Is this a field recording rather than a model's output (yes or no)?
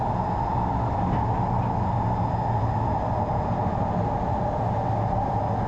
yes